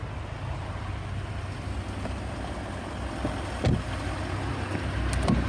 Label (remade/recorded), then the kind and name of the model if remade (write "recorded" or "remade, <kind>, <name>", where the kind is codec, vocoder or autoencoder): recorded